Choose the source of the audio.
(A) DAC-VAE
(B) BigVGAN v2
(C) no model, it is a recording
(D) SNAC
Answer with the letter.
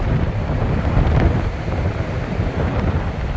B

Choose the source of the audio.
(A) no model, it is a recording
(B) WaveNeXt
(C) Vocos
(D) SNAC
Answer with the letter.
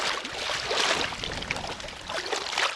A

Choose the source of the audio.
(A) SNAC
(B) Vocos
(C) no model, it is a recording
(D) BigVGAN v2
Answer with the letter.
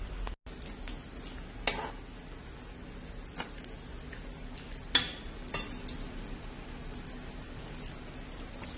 C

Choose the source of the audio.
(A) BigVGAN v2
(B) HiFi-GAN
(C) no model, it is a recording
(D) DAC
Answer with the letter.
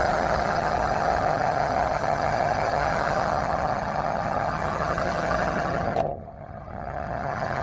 B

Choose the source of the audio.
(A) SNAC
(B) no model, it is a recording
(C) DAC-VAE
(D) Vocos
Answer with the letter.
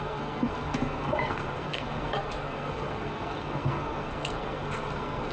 A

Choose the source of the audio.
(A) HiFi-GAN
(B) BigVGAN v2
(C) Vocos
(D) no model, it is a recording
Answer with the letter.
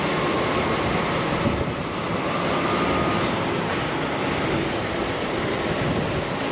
D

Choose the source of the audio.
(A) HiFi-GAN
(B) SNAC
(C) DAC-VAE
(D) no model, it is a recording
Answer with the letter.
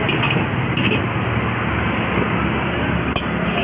D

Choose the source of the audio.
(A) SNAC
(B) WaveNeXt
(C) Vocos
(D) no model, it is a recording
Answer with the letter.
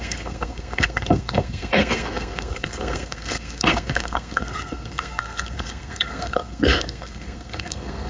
A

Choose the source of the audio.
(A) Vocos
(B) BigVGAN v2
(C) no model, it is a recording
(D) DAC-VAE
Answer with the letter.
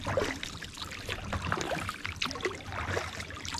C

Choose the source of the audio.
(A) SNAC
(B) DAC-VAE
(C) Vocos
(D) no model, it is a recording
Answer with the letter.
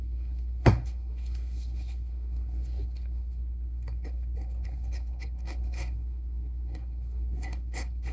A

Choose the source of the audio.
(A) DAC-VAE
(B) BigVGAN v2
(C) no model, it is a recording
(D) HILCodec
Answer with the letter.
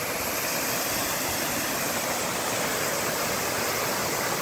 C